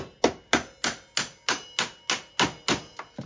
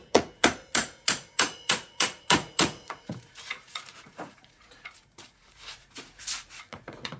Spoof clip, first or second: second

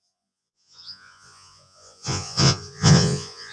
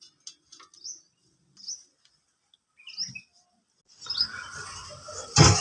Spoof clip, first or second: first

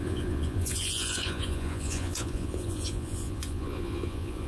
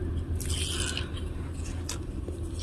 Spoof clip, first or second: first